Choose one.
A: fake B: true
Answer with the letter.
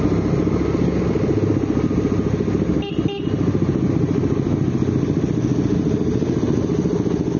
B